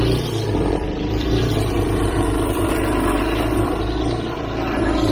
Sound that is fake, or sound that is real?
fake